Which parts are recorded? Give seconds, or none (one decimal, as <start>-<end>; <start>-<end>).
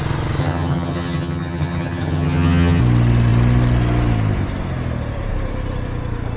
0.0-0.4; 2.8-6.4